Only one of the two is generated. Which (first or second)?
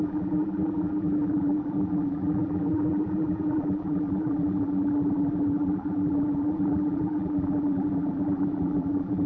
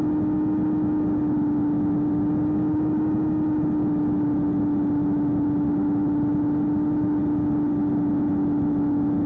first